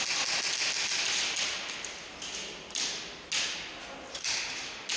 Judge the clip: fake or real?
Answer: real